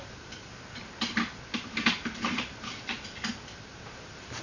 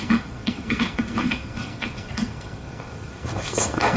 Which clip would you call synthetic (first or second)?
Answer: second